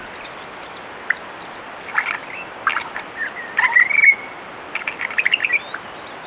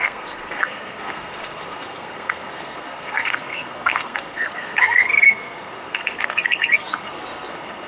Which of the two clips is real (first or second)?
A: first